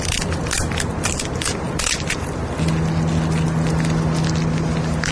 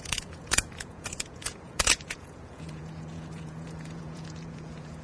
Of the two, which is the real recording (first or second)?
first